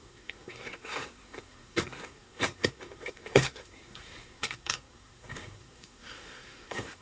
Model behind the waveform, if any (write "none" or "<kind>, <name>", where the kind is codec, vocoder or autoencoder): codec, SNAC